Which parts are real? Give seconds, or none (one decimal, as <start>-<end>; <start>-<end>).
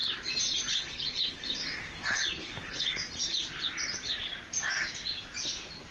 0.0-0.7; 1.6-2.1; 3.0-5.9